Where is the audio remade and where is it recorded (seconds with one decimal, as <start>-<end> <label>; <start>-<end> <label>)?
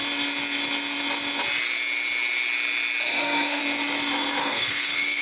0.0-3.1 recorded; 3.1-3.6 remade; 3.6-4.4 recorded; 4.4-5.2 remade